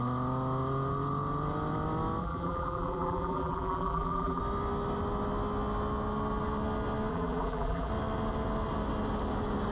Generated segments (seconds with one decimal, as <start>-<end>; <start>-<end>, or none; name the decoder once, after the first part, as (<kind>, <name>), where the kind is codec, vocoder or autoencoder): 2.2-4.4 (vocoder, BigVGAN v2); 7.1-7.9

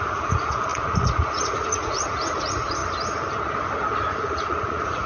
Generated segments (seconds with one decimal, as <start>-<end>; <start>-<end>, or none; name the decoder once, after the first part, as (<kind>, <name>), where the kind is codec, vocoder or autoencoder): 0.0-2.8 (vocoder, Vocos); 4.1-5.1